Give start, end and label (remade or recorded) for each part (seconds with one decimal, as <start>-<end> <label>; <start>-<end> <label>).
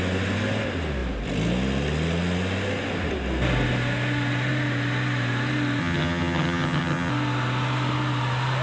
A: 0.0-5.8 recorded; 5.8-7.1 remade; 7.1-8.6 recorded